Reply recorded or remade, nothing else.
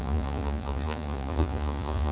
remade